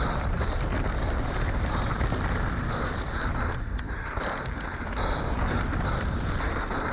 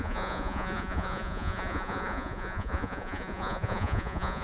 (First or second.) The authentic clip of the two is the first